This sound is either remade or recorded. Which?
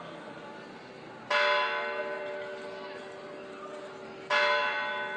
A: recorded